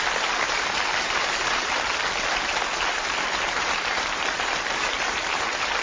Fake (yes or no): no